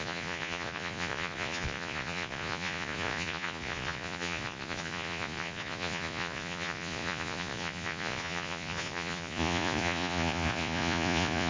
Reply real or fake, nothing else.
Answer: fake